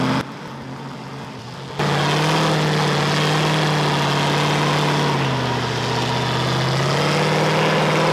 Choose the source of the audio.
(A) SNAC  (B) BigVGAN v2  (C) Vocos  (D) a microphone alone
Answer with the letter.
D